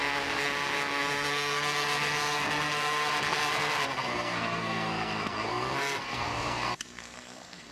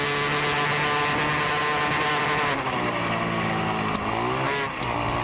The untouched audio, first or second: second